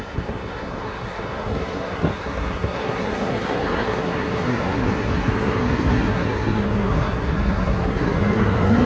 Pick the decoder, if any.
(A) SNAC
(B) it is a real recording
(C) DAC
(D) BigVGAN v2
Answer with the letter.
A